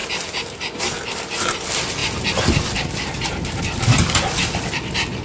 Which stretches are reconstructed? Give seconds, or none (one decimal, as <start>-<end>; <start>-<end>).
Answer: none